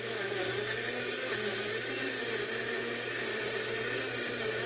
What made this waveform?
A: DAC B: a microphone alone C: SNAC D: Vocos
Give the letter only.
B